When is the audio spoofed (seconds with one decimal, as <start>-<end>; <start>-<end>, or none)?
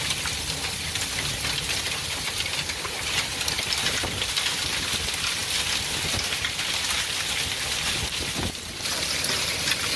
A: none